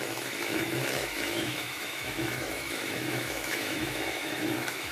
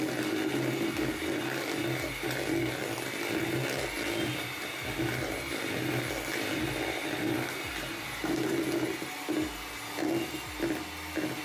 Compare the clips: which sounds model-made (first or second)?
first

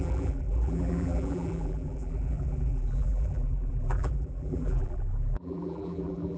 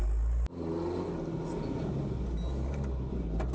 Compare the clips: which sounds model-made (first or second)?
first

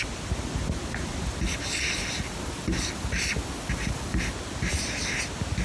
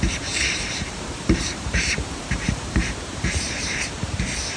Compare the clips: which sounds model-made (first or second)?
second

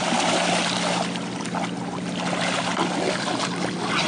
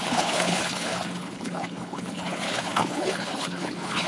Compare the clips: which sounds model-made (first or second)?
second